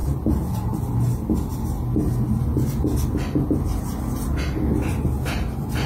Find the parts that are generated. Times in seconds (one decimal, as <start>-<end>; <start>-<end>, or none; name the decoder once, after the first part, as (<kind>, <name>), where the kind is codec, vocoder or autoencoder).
none